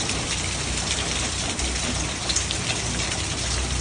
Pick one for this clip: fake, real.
fake